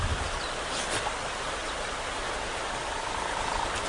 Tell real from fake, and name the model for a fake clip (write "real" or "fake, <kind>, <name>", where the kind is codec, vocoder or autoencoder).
real